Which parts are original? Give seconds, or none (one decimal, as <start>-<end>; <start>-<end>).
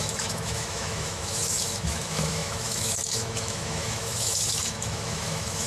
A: none